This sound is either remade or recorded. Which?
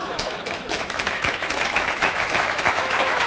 remade